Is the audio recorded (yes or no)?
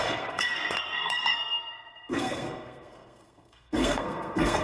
no